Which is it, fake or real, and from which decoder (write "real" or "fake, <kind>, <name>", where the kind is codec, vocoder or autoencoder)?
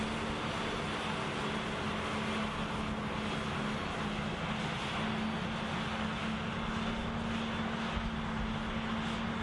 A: real